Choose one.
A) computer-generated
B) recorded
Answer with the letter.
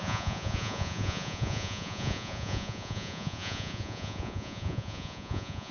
A